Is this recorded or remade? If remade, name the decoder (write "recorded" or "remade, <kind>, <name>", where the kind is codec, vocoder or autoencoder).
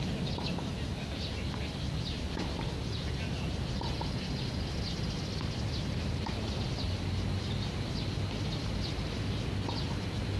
recorded